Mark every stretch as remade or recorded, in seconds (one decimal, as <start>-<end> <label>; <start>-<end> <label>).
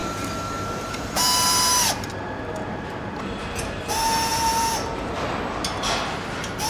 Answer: 0.0-4.3 recorded; 4.3-5.1 remade; 5.1-6.7 recorded